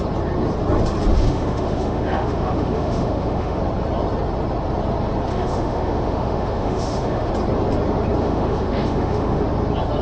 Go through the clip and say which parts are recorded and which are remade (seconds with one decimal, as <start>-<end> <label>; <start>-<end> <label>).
0.0-1.1 recorded; 1.1-3.6 remade; 3.6-5.3 recorded; 5.3-7.3 remade; 7.3-8.2 recorded; 8.2-9.4 remade; 9.4-10.0 recorded